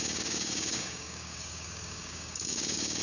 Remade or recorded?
remade